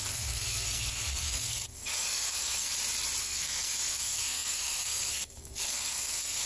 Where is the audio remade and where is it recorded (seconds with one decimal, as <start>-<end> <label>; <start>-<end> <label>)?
0.0-2.7 remade; 2.7-3.2 recorded; 3.2-6.5 remade